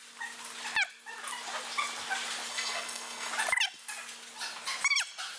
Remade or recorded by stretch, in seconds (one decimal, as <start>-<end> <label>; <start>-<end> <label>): 0.0-2.5 recorded; 2.5-3.3 remade; 3.3-5.4 recorded